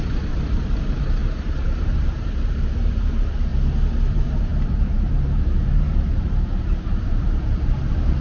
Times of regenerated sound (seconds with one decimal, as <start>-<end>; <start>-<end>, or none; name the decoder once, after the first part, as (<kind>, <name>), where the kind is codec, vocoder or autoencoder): 0.0-3.5 (vocoder, BigVGAN v2); 4.1-8.2